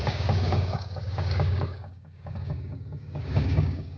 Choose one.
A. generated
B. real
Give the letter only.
A